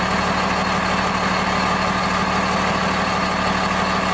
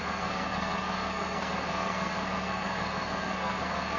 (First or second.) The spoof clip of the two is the second